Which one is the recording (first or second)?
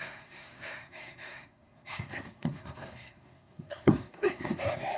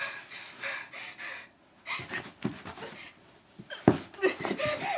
second